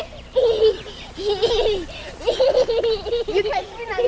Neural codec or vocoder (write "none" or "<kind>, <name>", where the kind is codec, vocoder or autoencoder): none